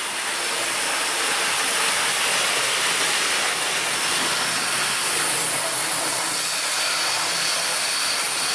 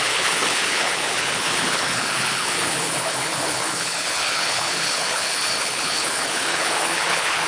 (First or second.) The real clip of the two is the first